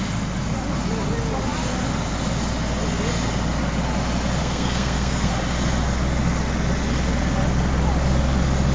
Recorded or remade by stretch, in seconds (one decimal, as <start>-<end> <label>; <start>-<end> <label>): 0.0-4.4 recorded; 4.4-5.3 remade; 5.3-8.7 recorded